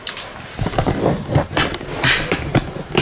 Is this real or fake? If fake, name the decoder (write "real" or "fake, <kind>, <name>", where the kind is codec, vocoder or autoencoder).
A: real